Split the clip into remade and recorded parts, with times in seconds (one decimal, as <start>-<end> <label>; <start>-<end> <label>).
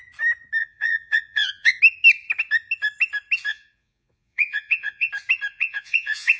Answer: 0.0-0.6 recorded; 0.6-1.8 remade; 1.8-3.5 recorded; 3.5-5.1 remade; 5.1-5.5 recorded; 5.5-6.4 remade